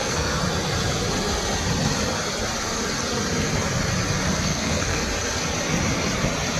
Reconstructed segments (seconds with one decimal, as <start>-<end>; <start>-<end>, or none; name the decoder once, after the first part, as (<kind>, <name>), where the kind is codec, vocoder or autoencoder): 0.0-0.4 (codec, SNAC); 4.4-5.0